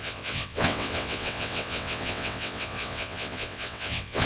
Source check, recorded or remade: remade